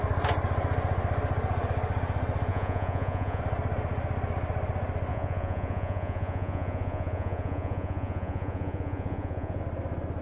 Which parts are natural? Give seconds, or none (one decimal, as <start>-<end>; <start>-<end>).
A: 0.0-2.5; 3.4-5.1; 9.6-10.2